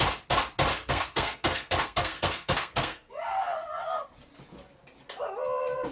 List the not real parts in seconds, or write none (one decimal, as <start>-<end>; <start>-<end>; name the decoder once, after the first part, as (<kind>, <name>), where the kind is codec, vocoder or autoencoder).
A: 0.7-3.1 (codec, SNAC)